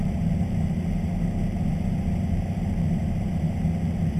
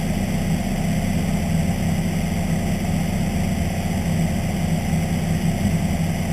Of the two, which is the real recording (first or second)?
second